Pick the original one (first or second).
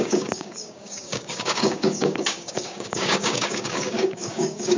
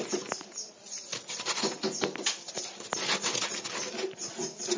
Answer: second